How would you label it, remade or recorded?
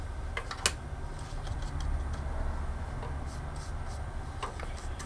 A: recorded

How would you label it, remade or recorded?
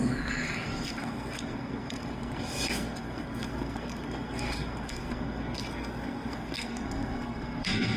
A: remade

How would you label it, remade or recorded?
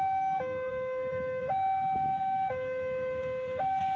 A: recorded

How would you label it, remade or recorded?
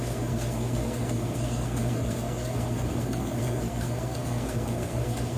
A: remade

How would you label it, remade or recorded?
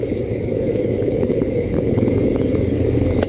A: remade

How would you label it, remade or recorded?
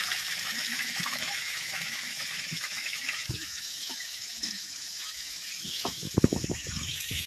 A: remade